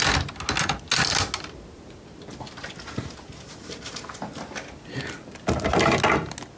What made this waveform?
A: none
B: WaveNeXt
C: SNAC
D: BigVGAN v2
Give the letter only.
A